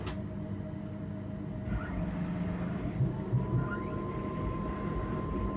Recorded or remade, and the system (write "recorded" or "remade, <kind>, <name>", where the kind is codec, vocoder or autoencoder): recorded